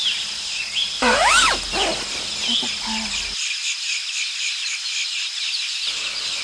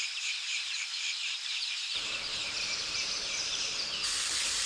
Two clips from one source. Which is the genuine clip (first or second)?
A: first